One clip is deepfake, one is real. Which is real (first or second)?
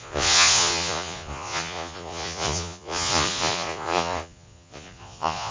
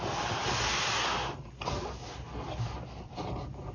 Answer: second